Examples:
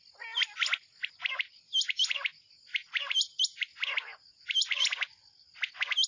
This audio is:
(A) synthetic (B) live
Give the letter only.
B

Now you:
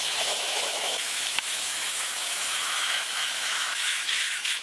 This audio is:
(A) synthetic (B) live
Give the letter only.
A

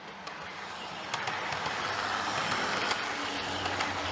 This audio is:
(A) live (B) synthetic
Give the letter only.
A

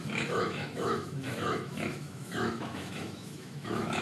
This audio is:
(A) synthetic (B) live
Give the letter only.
A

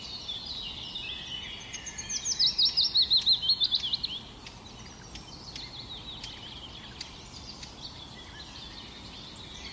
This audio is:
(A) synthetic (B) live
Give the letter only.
B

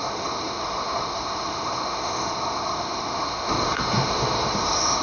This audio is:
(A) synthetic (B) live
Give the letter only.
A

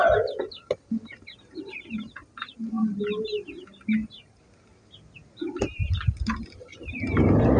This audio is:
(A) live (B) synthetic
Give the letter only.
A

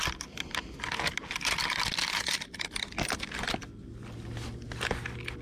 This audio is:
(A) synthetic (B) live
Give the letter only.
B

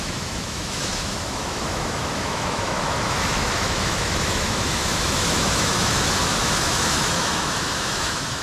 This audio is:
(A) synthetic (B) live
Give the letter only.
A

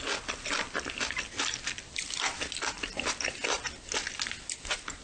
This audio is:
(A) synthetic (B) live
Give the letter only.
B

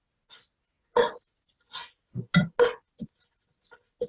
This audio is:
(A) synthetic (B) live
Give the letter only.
B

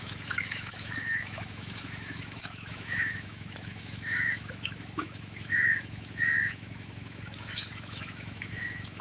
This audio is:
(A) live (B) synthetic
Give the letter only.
B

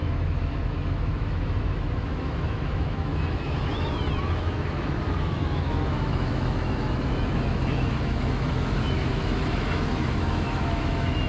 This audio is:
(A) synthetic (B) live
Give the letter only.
A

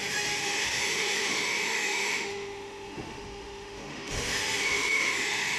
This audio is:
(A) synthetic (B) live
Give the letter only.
A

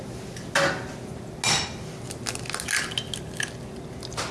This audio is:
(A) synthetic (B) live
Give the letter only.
B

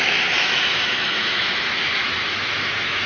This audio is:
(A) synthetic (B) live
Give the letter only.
A